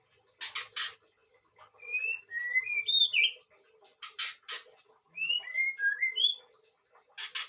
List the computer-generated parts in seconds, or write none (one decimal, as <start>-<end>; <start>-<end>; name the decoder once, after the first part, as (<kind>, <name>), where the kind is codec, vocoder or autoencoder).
none